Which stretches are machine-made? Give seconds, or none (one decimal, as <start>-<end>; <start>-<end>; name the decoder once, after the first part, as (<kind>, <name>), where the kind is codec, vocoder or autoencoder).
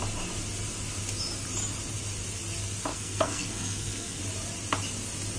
2.9-4.2 (codec, SNAC)